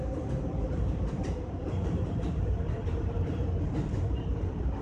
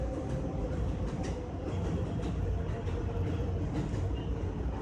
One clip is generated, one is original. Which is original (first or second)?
second